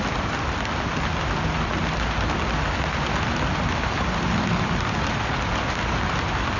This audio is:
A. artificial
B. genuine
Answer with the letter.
B